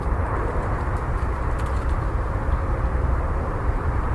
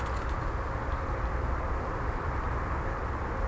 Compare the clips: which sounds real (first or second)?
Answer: second